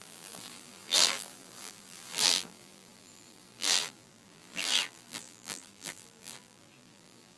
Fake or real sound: fake